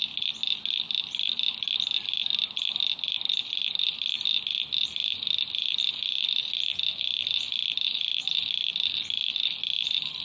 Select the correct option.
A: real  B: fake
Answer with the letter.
A